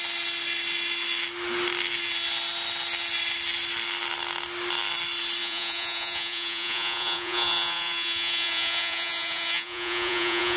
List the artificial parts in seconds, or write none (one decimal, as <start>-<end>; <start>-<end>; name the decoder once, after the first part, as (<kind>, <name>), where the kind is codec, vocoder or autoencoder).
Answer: 5.4-10.6 (vocoder, Vocos)